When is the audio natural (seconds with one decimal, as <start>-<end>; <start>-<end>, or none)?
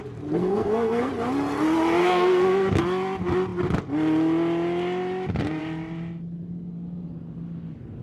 0.0-0.4; 1.1-2.0; 2.8-8.0